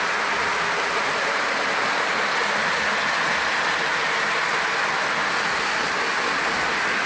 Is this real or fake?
real